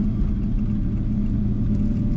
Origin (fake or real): real